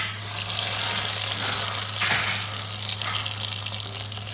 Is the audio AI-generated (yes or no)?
no